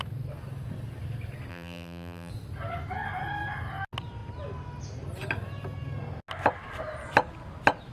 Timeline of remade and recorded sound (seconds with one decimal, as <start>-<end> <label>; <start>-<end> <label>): 0.0-1.5 recorded; 1.5-2.3 remade; 2.3-7.9 recorded